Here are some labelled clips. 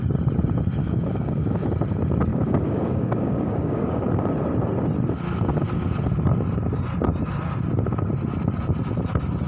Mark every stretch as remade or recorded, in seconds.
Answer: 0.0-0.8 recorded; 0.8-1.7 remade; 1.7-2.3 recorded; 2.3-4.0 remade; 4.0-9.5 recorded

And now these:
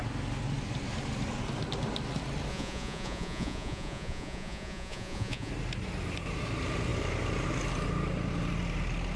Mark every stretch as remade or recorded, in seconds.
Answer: 0.0-2.5 recorded; 2.5-5.5 remade; 5.5-9.2 recorded

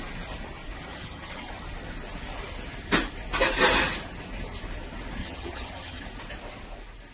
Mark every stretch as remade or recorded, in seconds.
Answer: 0.0-0.9 recorded; 0.9-1.5 remade; 1.5-5.2 recorded; 5.2-6.0 remade; 6.0-7.1 recorded

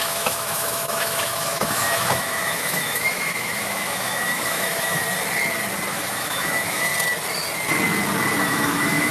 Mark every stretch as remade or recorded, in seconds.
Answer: 0.0-5.0 remade; 5.0-5.9 recorded; 5.9-6.9 remade; 6.9-8.5 recorded; 8.5-9.1 remade

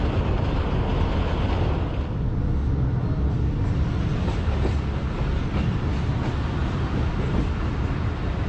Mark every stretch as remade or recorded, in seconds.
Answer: 0.0-6.6 recorded; 6.6-7.5 remade; 7.5-8.5 recorded

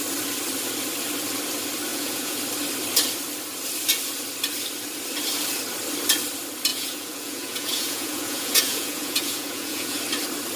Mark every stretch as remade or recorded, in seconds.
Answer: 0.0-1.9 recorded; 1.9-2.4 remade; 2.4-6.7 recorded; 6.7-10.0 remade; 10.0-10.6 recorded